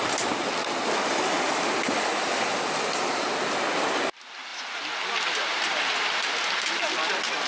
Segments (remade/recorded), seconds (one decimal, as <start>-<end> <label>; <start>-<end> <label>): 0.0-7.5 recorded

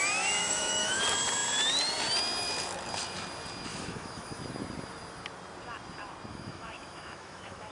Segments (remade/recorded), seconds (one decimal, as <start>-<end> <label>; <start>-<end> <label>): 0.0-0.4 recorded; 0.4-1.0 remade; 1.0-3.7 recorded; 3.7-4.4 remade; 4.4-6.3 recorded; 6.3-7.7 remade

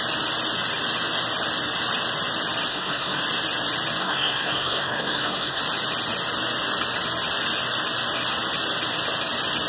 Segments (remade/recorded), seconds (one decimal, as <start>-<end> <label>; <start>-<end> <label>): 0.0-2.7 recorded; 2.7-3.2 remade; 3.2-4.0 recorded; 4.0-5.6 remade; 5.6-9.7 recorded

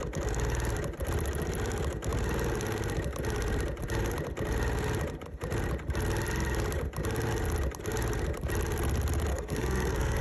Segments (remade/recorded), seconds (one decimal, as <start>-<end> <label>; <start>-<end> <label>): 0.0-9.3 recorded; 9.3-10.2 remade

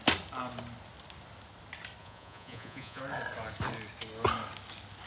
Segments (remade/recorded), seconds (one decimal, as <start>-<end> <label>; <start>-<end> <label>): 0.0-2.0 recorded; 2.0-3.0 remade; 3.0-5.1 recorded

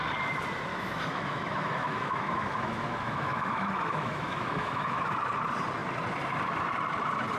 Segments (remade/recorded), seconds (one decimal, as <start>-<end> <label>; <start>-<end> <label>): 0.0-0.7 recorded; 0.7-5.1 remade; 5.1-7.4 recorded

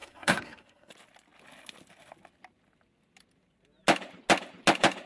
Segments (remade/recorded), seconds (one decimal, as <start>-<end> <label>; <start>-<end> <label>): 0.0-0.9 remade; 0.9-5.1 recorded

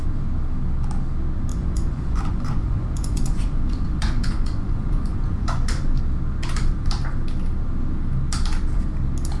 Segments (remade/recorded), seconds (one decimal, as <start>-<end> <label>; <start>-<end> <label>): 0.0-1.5 recorded; 1.5-6.0 remade; 6.0-9.4 recorded